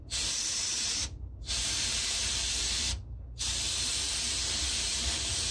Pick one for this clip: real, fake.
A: fake